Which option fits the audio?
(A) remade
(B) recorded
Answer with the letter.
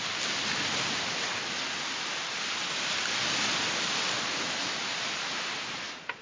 B